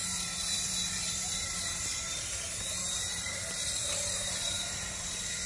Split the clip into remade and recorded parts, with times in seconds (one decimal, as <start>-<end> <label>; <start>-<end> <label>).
0.0-3.3 remade; 3.3-3.8 recorded; 3.8-5.5 remade